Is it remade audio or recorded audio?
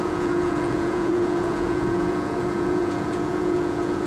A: remade